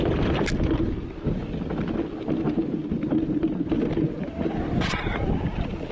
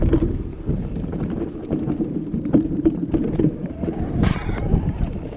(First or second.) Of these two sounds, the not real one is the second